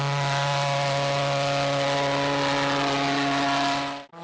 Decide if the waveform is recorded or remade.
recorded